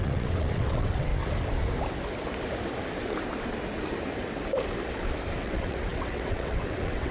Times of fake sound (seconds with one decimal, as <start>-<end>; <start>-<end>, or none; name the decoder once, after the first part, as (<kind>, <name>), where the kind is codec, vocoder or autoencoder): 0.0-1.1 (vocoder, WaveNeXt); 5.3-7.1

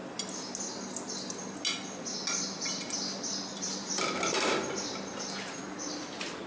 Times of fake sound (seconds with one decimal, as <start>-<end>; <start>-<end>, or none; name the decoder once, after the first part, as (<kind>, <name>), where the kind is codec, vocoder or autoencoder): none

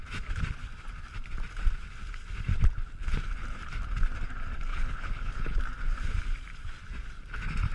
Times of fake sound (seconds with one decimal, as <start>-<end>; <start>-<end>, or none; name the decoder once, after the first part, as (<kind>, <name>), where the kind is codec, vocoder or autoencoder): 4.7-5.6 (codec, HILCodec)

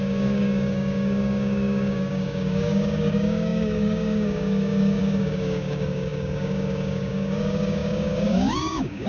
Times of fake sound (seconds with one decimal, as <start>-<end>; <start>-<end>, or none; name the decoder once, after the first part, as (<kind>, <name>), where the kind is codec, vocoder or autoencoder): 0.0-9.1 (codec, DAC)

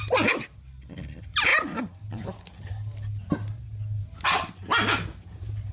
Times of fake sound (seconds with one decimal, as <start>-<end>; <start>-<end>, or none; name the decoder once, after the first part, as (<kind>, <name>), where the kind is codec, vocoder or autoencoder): none